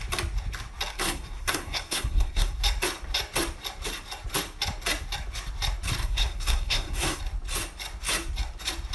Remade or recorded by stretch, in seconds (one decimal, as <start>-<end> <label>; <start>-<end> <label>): 0.0-0.9 recorded; 0.9-2.6 remade; 2.6-6.0 recorded; 6.0-7.2 remade; 7.2-8.9 recorded